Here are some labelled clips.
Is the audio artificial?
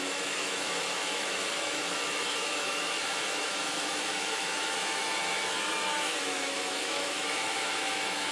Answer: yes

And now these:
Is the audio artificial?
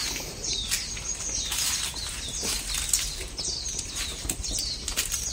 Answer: no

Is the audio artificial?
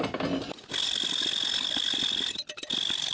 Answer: no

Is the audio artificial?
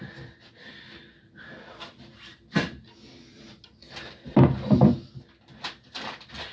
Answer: no